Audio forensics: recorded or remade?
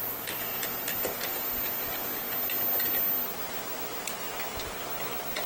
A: recorded